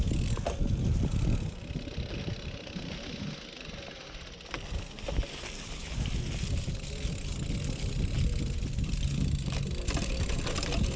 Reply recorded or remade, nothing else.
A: recorded